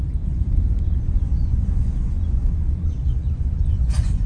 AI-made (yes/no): yes